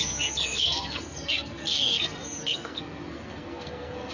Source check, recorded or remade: remade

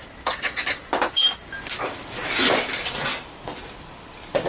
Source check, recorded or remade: recorded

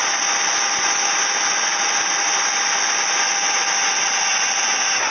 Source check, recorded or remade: recorded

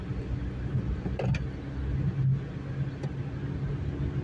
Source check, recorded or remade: recorded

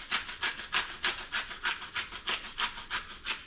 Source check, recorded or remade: recorded